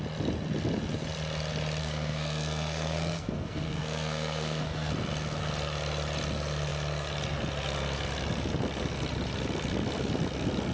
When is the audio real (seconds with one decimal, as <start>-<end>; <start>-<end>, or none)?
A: 0.0-1.8; 4.9-10.7